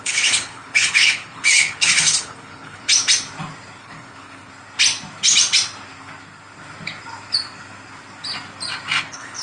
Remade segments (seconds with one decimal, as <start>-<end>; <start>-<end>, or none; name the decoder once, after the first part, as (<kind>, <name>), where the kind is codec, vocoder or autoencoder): 0.0-2.9 (codec, HILCodec); 3.8-4.5; 9.0-9.4